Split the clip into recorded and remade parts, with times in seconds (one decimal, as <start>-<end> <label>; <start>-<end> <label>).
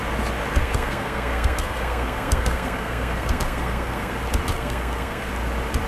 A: 0.0-0.6 recorded; 0.6-4.1 remade; 4.1-4.5 recorded; 4.5-5.3 remade; 5.3-5.9 recorded